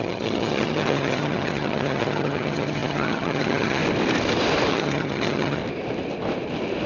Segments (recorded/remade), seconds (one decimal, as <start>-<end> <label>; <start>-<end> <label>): 0.0-3.8 remade; 3.8-4.7 recorded; 4.7-5.6 remade; 5.6-6.9 recorded